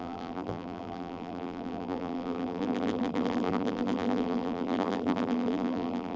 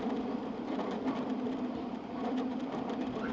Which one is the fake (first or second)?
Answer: first